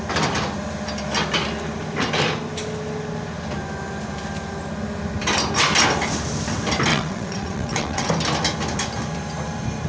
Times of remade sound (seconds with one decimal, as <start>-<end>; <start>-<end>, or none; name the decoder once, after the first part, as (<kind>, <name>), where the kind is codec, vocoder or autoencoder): 6.9-8.1 (vocoder, WaveNeXt)